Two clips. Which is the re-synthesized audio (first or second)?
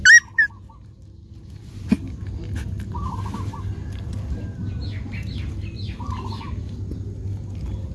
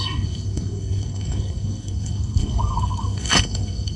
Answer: second